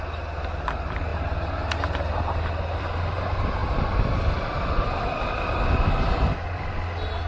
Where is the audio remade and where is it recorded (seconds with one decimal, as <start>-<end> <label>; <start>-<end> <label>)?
0.0-7.3 recorded